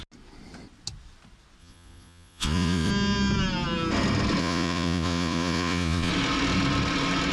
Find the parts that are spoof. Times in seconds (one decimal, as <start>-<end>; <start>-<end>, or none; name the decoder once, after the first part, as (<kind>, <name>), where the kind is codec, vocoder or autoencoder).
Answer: 1.6-2.9 (vocoder, Vocos); 4.4-6.1